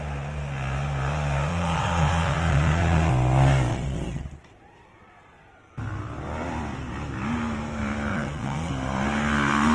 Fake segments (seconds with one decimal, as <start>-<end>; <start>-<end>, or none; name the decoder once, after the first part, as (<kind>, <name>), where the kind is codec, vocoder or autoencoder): 1.5-3.1 (vocoder, Vocos); 3.7-5.5; 8.1-8.7